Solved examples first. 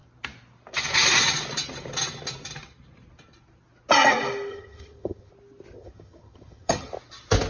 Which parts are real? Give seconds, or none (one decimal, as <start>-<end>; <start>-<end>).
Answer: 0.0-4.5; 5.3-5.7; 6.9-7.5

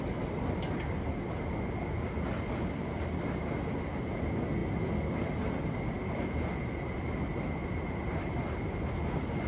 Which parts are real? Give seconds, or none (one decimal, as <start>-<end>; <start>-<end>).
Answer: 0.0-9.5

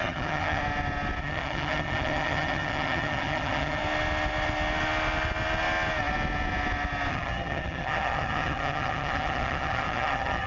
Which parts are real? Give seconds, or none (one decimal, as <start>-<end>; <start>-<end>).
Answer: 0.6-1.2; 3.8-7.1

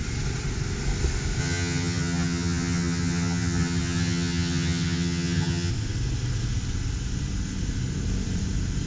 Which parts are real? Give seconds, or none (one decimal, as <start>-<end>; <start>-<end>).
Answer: 0.0-1.4; 5.7-8.9